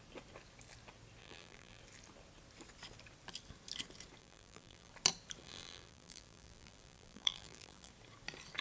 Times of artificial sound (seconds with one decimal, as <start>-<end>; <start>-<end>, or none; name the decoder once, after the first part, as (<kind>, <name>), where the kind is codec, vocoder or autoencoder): 1.2-1.8 (vocoder, BigVGAN v2); 4.2-4.9; 5.4-7.9